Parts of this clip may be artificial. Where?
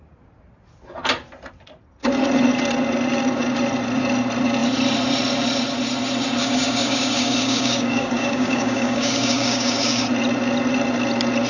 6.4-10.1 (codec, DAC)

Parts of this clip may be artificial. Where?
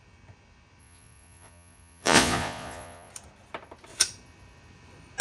0.8-3.1 (vocoder, Vocos)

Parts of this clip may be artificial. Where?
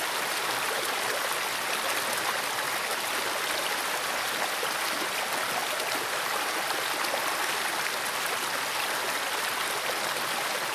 none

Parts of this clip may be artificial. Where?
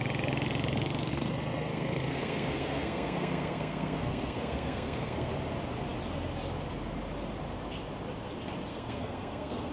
1.1-5.3 (codec, SNAC); 8.7-9.7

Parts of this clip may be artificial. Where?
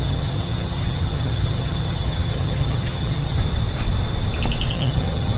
0.0-3.4 (vocoder, HiFi-GAN); 4.7-5.4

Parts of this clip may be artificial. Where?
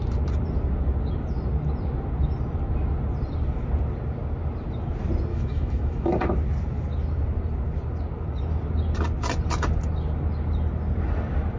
5.3-6.2 (autoencoder, DAC-VAE)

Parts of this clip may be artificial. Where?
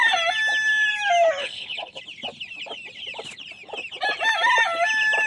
1.4-2.0 (codec, HILCodec)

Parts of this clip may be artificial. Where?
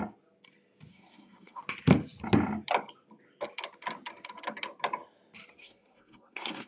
0.9-1.6 (codec, SNAC); 5.6-6.7